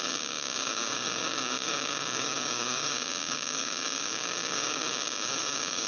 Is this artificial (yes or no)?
yes